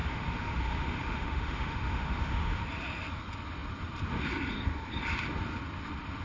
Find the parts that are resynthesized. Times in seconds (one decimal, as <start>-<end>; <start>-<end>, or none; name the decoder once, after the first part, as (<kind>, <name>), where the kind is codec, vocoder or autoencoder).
0.0-2.6 (autoencoder, DAC-VAE)